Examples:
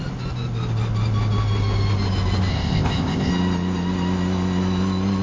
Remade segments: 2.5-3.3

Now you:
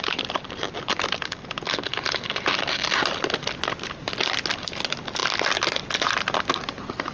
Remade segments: none

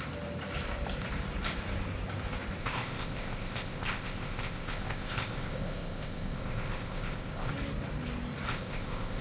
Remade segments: 2.6-7.5; 8.5-9.2

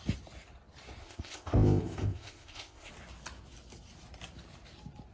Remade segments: 1.0-2.9